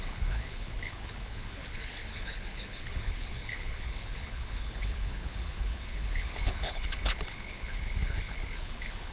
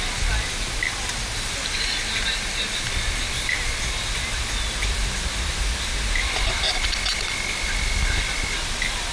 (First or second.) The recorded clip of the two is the second